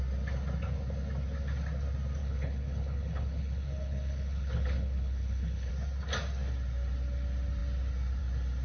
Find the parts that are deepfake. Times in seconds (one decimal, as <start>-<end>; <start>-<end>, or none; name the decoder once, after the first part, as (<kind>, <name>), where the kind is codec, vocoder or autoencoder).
2.2-5.7 (codec, HILCodec)